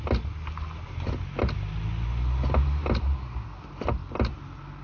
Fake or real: real